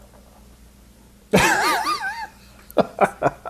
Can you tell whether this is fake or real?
real